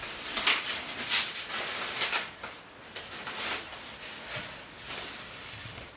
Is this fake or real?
real